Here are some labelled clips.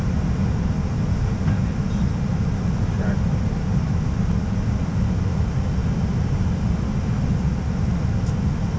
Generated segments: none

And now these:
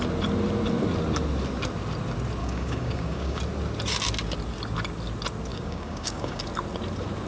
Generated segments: 2.4-3.4 (codec, DAC); 5.5-6.4